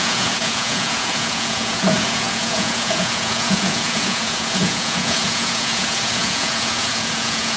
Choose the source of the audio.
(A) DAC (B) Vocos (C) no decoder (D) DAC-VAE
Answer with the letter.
B